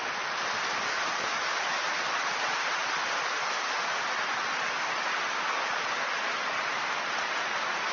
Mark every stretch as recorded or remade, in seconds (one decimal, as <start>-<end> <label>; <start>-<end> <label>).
0.0-7.9 recorded